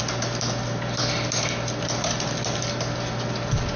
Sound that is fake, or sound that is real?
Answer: real